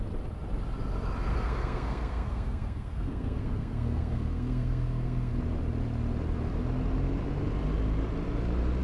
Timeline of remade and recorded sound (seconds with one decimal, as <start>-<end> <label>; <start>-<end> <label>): 0.0-1.3 recorded; 1.3-5.3 remade; 5.3-8.8 recorded